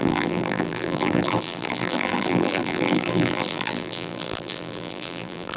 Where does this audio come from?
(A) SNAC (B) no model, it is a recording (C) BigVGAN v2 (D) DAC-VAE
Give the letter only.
C